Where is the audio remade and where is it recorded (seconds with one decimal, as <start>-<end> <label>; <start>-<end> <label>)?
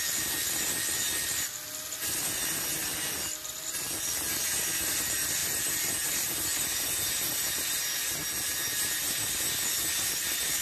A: 0.0-10.6 recorded